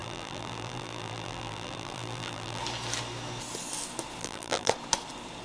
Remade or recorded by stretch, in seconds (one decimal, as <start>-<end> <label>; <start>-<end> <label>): 0.0-2.6 remade; 2.6-4.2 recorded; 4.2-4.7 remade; 4.7-5.4 recorded